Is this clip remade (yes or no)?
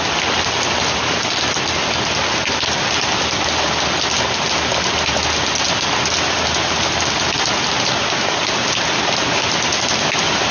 no